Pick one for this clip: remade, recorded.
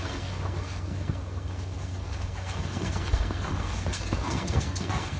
remade